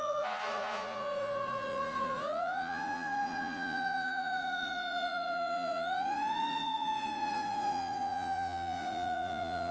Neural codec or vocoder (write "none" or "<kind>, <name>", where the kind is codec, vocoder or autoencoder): vocoder, Vocos